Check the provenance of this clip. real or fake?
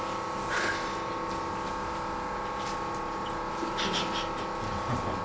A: real